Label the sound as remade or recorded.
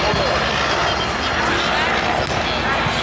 recorded